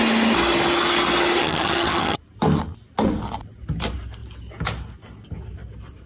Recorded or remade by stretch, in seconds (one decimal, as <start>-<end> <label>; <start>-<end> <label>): 0.0-1.4 recorded; 1.4-2.2 remade; 2.2-6.1 recorded